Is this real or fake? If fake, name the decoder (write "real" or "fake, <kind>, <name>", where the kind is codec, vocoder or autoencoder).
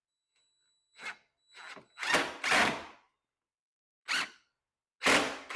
real